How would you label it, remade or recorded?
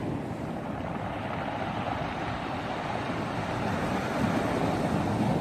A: recorded